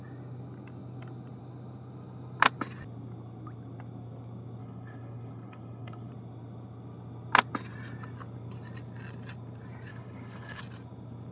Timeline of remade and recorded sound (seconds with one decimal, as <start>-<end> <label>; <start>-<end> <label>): 0.0-4.6 recorded; 4.6-6.1 remade; 6.1-9.9 recorded; 9.9-10.6 remade; 10.6-11.3 recorded